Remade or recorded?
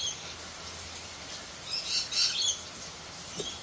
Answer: recorded